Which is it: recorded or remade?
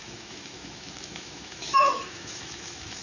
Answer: remade